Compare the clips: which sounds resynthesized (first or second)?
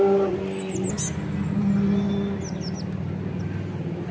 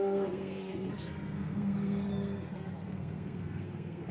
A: second